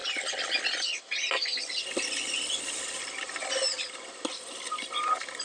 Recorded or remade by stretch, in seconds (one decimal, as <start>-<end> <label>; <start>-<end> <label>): 0.0-5.4 recorded